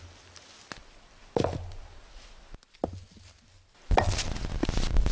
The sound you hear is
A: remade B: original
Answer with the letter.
B